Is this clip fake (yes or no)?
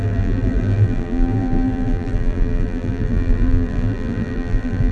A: yes